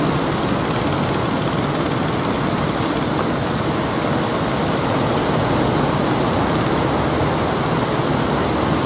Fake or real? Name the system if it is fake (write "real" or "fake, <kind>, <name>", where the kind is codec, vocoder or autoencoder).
real